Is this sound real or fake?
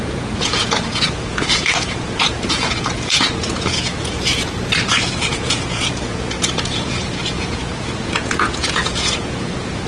fake